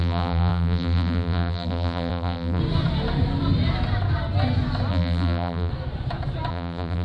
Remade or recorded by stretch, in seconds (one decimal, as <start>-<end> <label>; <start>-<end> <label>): 0.0-2.6 remade; 2.6-4.9 recorded; 4.9-5.7 remade; 5.7-6.5 recorded; 6.5-7.0 remade